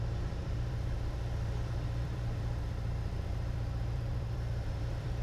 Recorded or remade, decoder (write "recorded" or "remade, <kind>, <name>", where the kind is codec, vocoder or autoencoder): remade, vocoder, BigVGAN v2